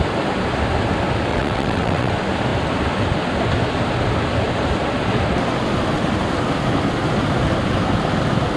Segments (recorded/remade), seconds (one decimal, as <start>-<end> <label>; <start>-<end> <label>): 0.0-1.3 recorded; 1.3-2.1 remade; 2.1-8.6 recorded